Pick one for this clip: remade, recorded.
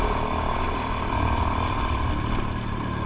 recorded